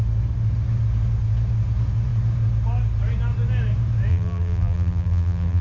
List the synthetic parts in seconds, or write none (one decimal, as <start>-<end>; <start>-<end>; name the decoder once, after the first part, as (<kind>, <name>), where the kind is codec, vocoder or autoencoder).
4.1-5.6 (vocoder, BigVGAN v2)